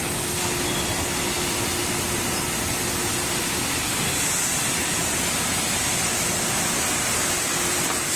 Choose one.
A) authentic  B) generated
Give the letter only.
A